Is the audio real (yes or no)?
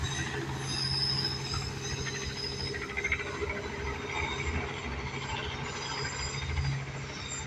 yes